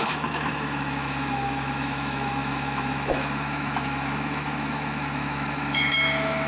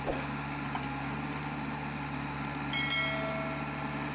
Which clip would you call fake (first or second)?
first